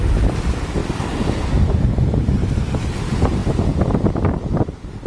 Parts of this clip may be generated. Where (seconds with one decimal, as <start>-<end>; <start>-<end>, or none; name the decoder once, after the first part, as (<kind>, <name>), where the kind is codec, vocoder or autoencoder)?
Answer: none